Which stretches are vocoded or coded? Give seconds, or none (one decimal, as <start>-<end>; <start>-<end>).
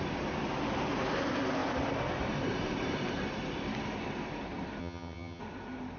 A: 4.8-5.4